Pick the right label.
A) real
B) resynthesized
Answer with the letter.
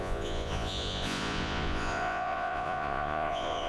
B